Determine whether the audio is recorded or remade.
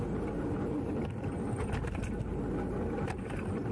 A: recorded